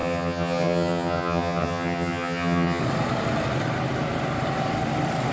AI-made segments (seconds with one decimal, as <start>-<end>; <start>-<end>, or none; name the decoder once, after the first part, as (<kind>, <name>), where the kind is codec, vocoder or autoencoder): 0.0-2.8 (vocoder, HiFi-GAN)